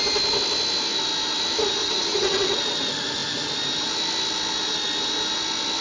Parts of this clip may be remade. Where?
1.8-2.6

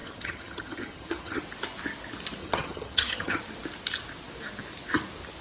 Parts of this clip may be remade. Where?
0.0-1.4; 2.4-3.4

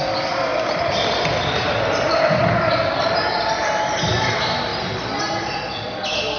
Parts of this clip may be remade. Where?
none